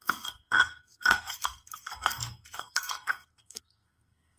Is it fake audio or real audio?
fake